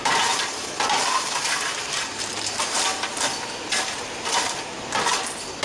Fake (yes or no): yes